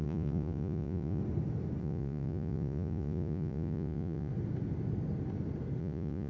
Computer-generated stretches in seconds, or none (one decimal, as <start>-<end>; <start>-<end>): 0.0-1.2; 1.8-4.3; 5.8-6.3